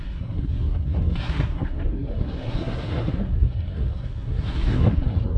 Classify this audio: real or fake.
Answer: fake